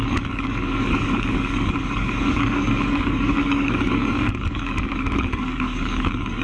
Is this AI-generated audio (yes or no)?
yes